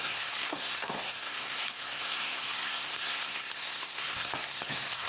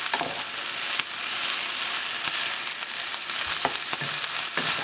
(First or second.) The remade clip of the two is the first